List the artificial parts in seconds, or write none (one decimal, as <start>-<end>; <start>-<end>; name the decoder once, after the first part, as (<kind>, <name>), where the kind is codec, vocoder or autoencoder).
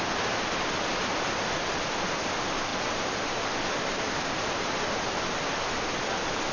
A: none